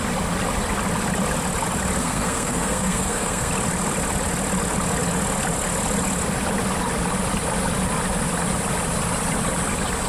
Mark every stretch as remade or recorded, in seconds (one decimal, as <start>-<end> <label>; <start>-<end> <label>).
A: 0.0-2.0 recorded; 2.0-3.5 remade; 3.5-10.1 recorded